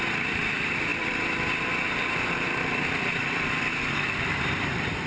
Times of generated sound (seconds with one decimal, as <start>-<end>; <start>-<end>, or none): 0.0-5.1